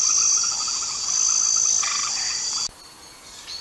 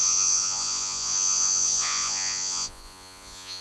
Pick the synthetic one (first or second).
second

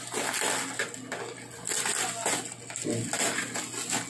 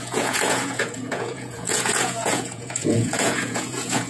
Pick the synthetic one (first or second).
second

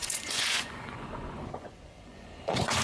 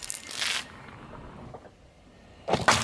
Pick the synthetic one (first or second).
first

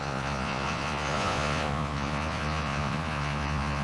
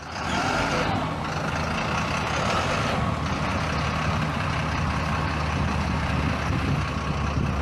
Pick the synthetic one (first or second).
first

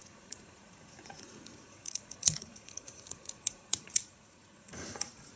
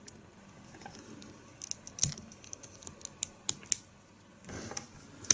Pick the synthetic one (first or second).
first